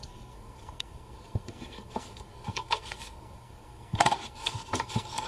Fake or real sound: fake